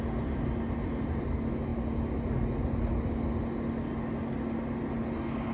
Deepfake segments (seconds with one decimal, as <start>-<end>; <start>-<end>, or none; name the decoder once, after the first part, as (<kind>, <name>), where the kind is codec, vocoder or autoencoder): none